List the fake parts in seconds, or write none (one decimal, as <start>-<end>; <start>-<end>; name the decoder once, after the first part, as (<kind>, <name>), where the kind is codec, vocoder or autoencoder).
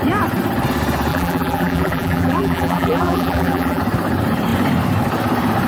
1.1-3.8 (vocoder, BigVGAN v2)